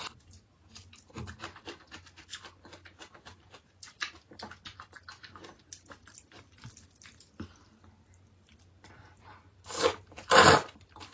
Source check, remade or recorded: recorded